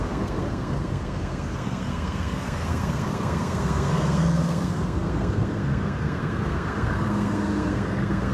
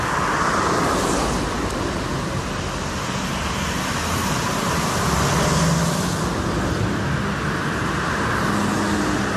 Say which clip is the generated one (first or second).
first